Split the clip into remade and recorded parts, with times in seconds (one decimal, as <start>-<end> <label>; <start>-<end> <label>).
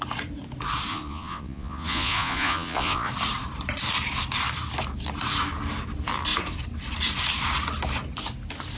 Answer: 0.0-0.9 recorded; 0.9-3.1 remade; 3.1-8.8 recorded